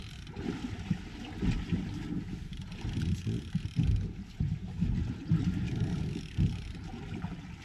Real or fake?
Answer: real